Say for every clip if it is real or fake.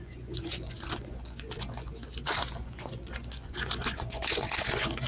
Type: fake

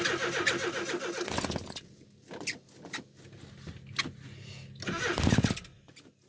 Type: real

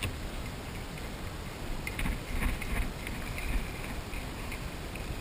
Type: real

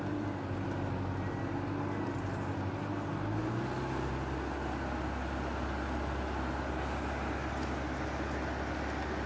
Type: real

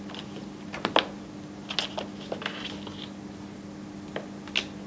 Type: real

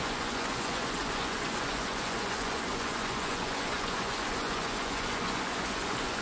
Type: fake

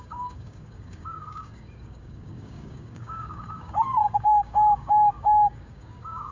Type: fake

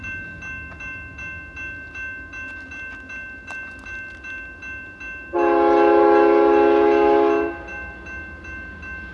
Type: real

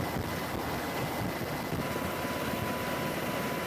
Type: real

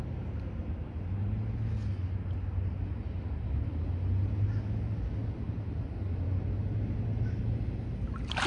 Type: real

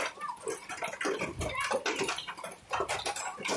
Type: real